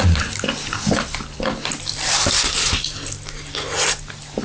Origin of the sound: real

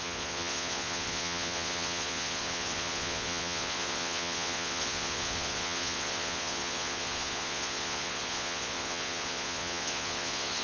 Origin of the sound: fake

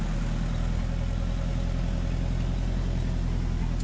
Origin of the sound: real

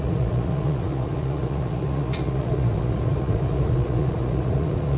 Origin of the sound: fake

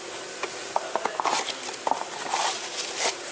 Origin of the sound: real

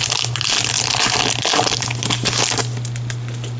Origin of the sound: real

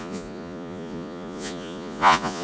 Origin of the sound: fake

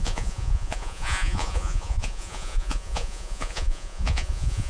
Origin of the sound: fake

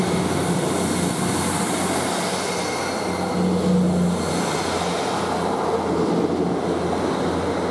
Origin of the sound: real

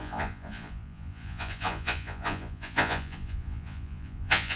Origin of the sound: fake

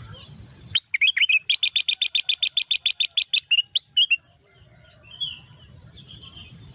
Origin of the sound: real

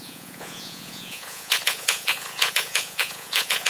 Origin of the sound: fake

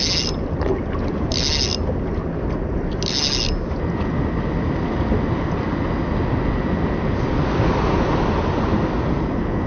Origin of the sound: real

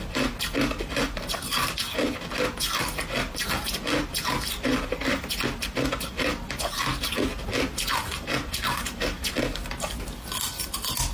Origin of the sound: real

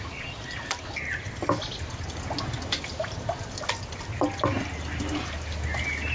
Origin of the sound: real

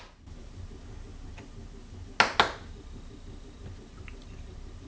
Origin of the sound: real